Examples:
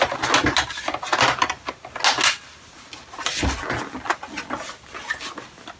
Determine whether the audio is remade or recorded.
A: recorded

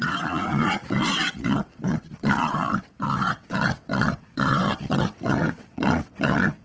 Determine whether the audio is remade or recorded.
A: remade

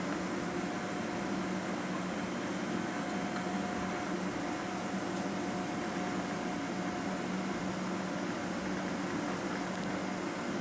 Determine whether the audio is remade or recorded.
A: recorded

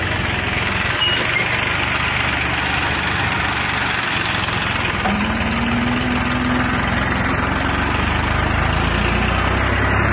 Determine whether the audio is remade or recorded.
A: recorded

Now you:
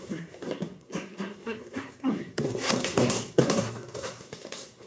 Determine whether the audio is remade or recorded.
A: remade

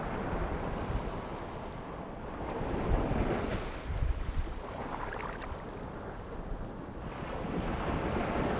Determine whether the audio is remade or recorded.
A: recorded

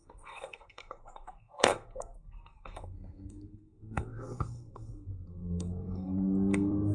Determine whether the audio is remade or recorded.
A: remade